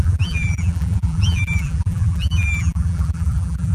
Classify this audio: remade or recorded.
remade